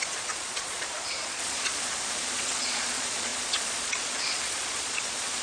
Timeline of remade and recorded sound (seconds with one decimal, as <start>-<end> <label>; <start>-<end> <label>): 0.0-5.4 remade